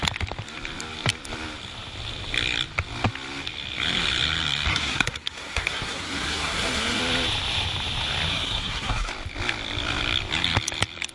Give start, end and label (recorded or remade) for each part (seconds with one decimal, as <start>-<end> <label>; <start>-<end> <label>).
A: 0.0-4.7 recorded; 4.7-7.0 remade; 7.0-8.3 recorded; 8.3-9.1 remade; 9.1-11.1 recorded